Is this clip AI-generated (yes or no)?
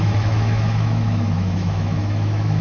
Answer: yes